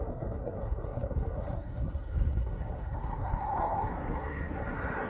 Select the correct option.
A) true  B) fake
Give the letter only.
B